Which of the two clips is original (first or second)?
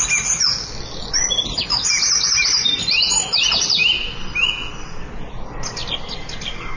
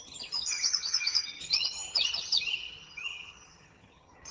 first